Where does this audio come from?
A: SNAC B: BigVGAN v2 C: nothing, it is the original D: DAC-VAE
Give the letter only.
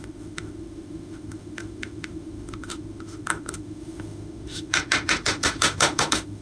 D